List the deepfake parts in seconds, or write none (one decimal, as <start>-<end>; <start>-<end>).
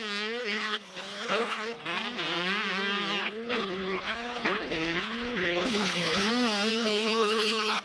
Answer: 0.4-1.8; 3.2-6.3; 6.7-7.8